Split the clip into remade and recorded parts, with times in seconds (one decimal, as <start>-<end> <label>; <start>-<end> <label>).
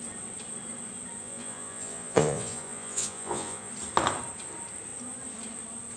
0.0-1.2 recorded; 1.2-3.7 remade; 3.7-6.0 recorded